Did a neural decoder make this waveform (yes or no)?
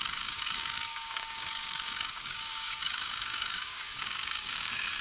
yes